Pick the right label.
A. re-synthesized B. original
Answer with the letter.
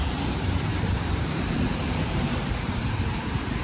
A